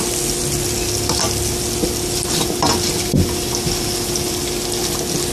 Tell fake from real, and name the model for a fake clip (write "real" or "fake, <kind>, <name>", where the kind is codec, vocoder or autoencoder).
real